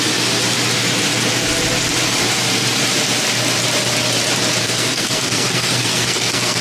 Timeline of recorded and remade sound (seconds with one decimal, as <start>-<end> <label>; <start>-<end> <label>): 0.0-4.6 recorded; 4.6-6.6 remade